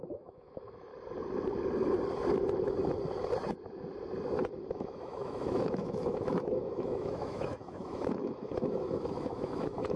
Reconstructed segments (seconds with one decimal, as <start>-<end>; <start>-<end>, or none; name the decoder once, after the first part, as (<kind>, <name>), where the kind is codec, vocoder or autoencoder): 0.0-0.9 (autoencoder, DAC-VAE); 4.7-10.0